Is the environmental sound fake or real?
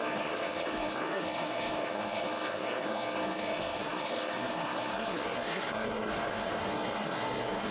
fake